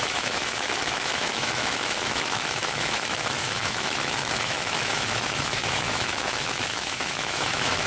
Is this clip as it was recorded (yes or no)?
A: no